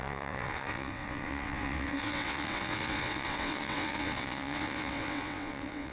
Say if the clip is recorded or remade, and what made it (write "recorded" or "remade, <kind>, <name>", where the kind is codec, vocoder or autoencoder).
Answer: remade, vocoder, WaveNeXt